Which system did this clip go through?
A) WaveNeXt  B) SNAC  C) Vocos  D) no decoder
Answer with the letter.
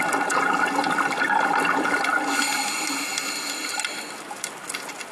D